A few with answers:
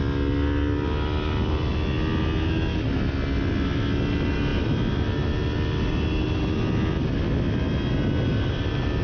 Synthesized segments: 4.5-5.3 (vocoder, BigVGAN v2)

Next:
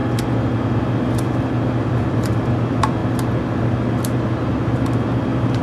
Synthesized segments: 1.9-3.0 (vocoder, BigVGAN v2)

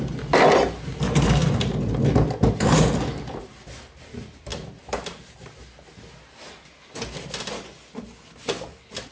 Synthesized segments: 4.5-5.6 (vocoder, BigVGAN v2)

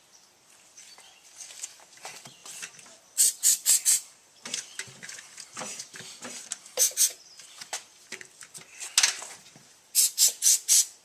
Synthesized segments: 2.4-5.8 (vocoder, BigVGAN v2); 7.9-8.6

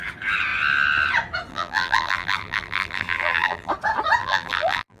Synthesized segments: 1.5-3.7 (vocoder, BigVGAN v2); 4.2-5.0

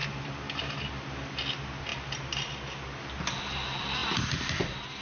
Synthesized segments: 0.0-0.8 (vocoder, BigVGAN v2)